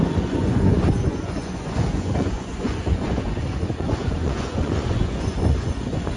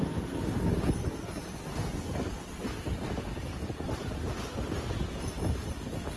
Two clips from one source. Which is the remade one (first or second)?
first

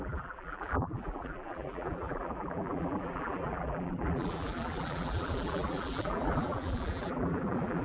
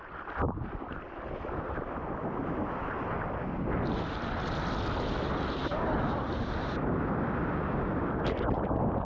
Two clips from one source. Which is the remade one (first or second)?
first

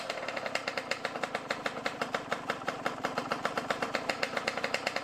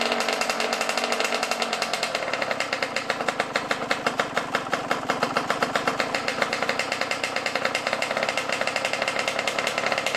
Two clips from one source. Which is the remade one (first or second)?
first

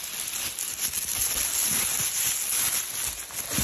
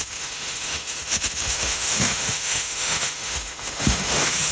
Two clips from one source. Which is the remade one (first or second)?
second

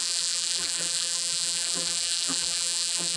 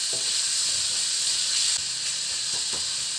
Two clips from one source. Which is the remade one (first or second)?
first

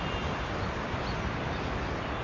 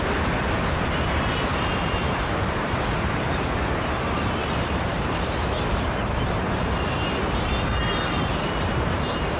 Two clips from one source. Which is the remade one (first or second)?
second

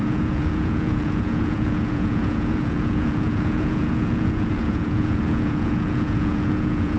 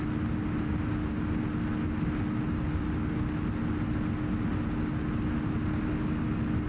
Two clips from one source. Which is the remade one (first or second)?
first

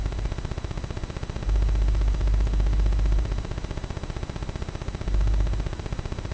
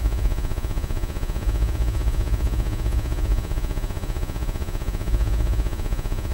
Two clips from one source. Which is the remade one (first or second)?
second